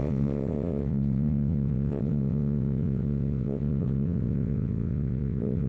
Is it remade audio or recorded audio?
remade